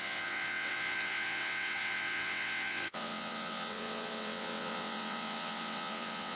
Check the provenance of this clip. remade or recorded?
remade